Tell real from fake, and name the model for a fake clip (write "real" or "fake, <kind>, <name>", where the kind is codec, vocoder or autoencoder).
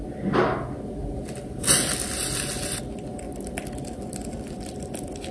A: real